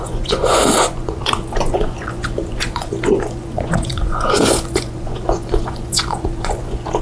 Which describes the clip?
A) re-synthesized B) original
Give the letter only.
A